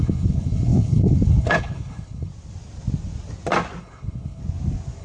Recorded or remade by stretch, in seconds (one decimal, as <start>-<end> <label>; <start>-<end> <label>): 0.0-2.3 remade; 2.3-3.8 recorded; 3.8-4.4 remade; 4.4-5.0 recorded